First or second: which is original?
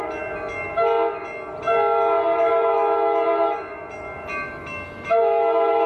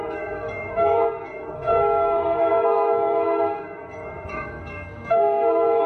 first